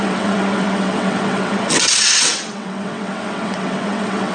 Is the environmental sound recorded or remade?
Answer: remade